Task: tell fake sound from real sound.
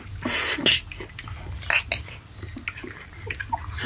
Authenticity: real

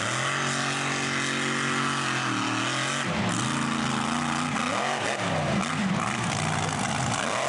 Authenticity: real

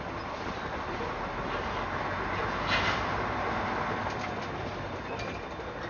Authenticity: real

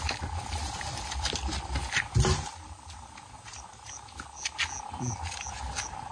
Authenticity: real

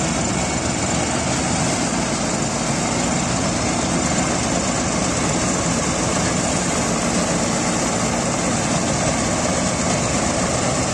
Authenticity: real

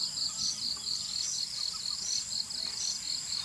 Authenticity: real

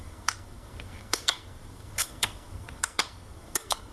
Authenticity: fake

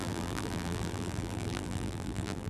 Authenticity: fake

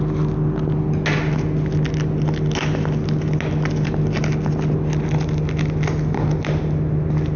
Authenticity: real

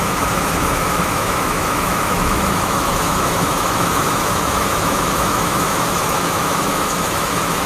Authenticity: fake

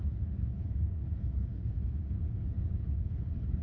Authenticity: fake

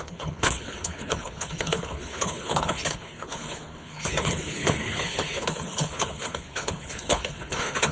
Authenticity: fake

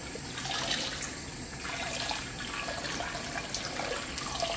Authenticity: real